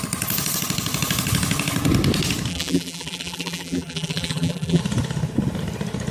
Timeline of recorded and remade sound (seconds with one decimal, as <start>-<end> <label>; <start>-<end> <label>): 0.0-2.5 recorded; 2.5-4.8 remade; 4.8-6.1 recorded